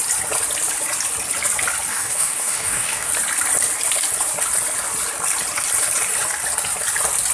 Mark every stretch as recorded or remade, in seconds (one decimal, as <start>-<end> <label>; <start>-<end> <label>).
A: 0.0-1.9 recorded; 1.9-3.1 remade; 3.1-7.3 recorded